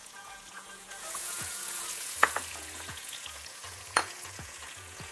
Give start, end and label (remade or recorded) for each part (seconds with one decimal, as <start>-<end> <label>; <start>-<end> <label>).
0.0-5.1 remade